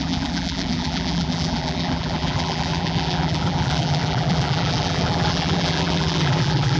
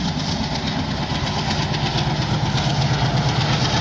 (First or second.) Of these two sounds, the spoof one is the first